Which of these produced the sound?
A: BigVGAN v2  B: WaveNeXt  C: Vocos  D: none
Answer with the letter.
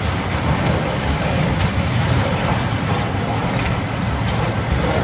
D